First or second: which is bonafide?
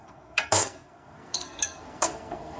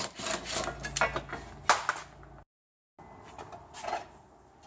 second